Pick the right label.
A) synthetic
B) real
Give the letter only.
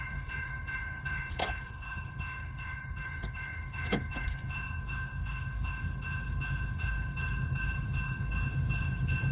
A